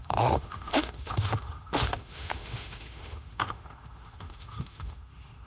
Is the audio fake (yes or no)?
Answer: yes